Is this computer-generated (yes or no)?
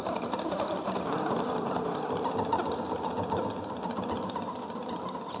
no